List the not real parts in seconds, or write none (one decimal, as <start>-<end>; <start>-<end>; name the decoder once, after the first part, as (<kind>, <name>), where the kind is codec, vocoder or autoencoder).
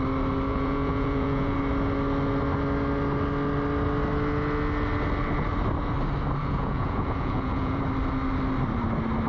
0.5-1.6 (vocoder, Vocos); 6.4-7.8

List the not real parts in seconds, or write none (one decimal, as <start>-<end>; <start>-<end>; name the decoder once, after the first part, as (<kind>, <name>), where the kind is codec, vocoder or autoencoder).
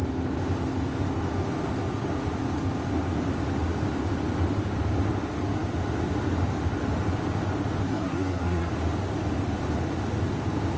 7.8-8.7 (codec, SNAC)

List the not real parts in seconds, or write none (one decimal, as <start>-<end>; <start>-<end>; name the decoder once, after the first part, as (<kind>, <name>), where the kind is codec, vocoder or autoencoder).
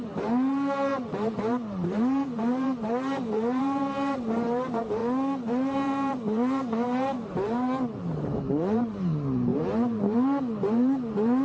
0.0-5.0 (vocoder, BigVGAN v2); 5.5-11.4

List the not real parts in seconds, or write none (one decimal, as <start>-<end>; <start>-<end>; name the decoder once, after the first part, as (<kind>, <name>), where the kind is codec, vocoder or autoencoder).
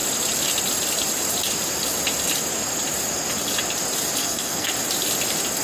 4.2-4.7 (codec, SNAC)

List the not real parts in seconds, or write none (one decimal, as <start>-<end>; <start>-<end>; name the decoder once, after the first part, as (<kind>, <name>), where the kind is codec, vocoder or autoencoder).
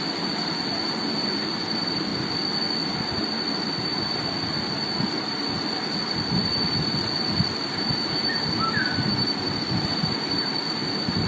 none